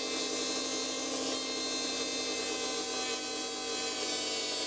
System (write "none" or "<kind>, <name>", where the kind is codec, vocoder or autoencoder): none